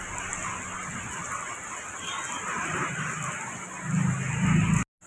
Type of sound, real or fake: real